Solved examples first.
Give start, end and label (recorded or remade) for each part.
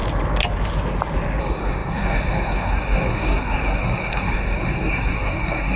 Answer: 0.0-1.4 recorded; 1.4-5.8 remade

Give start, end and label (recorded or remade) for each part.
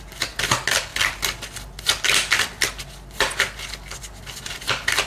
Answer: 0.0-5.1 recorded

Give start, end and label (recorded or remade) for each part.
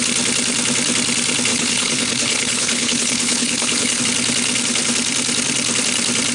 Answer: 0.0-1.5 recorded; 1.5-4.0 remade; 4.0-6.3 recorded